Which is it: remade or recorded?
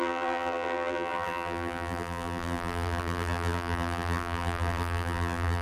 remade